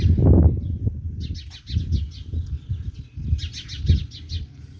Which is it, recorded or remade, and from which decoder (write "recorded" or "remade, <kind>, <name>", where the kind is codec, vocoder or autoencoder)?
recorded